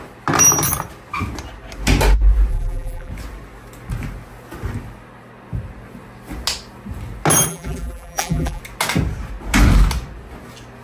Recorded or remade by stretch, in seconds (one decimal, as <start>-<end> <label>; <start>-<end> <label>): 0.0-2.5 recorded; 2.5-3.1 remade; 3.1-7.5 recorded; 7.5-8.6 remade; 8.6-10.8 recorded